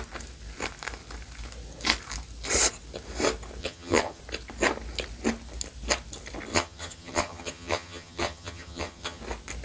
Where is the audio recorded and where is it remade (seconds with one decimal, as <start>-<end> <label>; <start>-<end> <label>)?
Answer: 0.0-3.6 recorded; 3.6-4.2 remade; 4.2-6.5 recorded; 6.5-9.2 remade; 9.2-9.6 recorded